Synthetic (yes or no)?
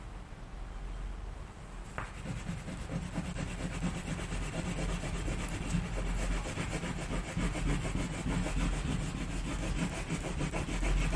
no